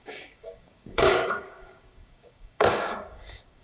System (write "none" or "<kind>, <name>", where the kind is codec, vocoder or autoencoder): codec, DAC